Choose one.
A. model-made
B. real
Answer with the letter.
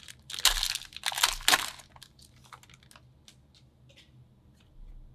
B